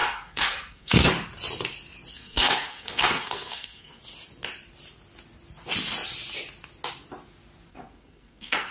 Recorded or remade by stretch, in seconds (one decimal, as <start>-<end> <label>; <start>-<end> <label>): 0.0-1.1 remade; 1.1-2.1 recorded; 2.1-4.0 remade; 4.0-7.7 recorded; 7.7-8.7 remade